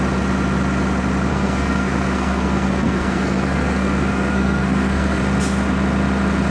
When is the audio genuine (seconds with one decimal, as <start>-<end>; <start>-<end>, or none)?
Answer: 0.0-1.3; 5.2-6.5